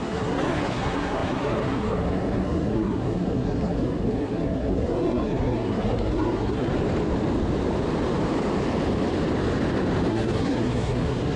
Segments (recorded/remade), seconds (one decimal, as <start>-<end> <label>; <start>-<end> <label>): 0.0-6.7 remade; 6.7-10.1 recorded; 10.1-11.4 remade